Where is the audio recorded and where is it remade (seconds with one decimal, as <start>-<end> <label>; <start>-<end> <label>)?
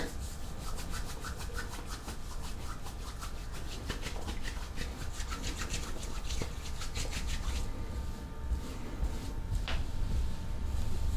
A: 0.0-11.2 recorded